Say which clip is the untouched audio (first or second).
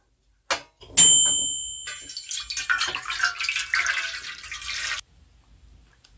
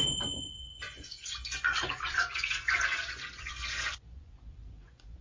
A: first